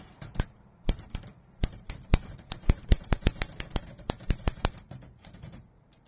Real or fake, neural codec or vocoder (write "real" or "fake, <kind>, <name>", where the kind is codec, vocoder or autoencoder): fake, vocoder, BigVGAN v2